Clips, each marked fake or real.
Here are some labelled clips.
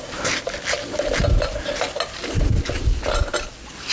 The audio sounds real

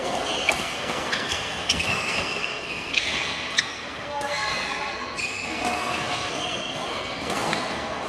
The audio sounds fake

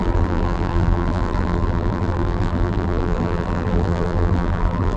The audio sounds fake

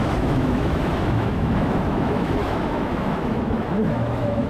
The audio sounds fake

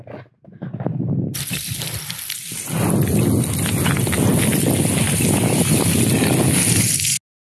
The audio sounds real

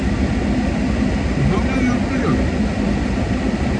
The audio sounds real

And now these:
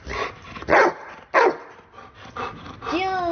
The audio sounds real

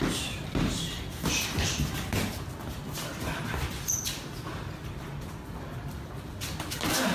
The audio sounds real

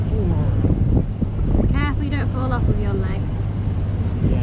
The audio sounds real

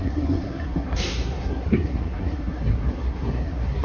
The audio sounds fake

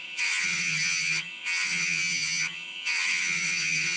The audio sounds fake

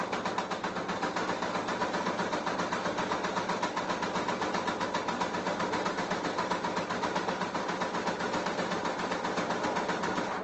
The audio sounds real